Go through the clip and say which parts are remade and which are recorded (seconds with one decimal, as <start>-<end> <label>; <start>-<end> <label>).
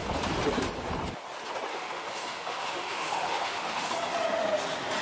0.0-1.7 recorded; 1.7-3.9 remade; 3.9-5.0 recorded